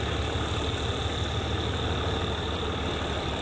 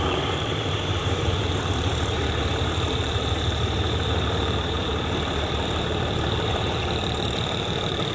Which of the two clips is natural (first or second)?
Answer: first